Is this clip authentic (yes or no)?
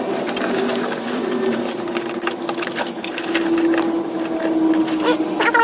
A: yes